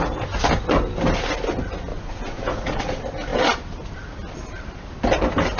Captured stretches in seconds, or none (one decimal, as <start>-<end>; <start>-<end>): 0.0-1.9; 2.8-5.6